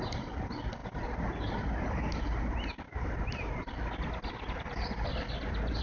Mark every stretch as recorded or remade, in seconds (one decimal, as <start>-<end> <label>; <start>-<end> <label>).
0.0-5.8 recorded